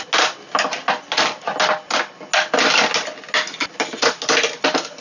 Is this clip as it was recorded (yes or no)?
yes